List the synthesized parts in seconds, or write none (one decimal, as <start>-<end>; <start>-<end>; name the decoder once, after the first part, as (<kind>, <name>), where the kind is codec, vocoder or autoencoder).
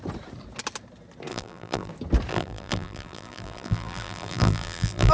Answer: 1.3-1.9 (vocoder, BigVGAN v2); 2.3-5.1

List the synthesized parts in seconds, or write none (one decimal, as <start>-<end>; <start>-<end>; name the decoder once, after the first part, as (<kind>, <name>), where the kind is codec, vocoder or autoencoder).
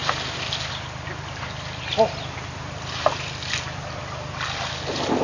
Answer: none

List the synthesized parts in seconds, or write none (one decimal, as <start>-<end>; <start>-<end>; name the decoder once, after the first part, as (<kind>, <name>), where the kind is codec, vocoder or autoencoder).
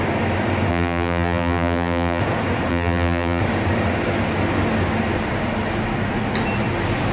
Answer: 0.7-2.2 (vocoder, BigVGAN v2); 2.7-3.4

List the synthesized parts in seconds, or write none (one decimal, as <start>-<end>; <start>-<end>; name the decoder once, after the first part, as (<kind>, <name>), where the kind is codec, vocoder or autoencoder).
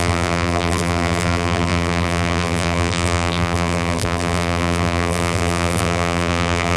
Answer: 0.0-6.8 (vocoder, BigVGAN v2)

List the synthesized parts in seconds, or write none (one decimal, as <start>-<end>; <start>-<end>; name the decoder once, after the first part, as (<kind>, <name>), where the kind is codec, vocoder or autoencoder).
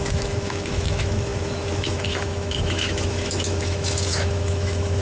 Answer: 0.0-5.0 (autoencoder, DAC-VAE)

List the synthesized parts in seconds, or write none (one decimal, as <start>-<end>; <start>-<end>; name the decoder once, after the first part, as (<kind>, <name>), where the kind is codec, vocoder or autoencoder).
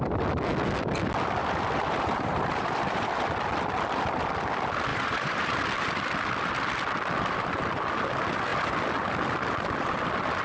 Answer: 1.4-3.2 (vocoder, BigVGAN v2); 4.9-5.6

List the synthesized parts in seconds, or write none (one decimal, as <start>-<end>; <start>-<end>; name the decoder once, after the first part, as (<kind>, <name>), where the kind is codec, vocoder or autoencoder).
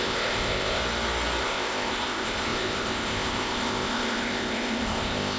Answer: 0.0-0.8 (codec, ZipCodec); 1.4-5.4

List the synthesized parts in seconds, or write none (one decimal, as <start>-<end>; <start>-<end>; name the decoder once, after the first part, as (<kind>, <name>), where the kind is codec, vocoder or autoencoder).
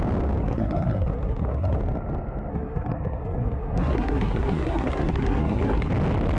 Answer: 0.4-1.8 (codec, SNAC); 2.5-5.9